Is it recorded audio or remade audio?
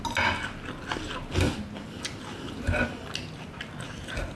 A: recorded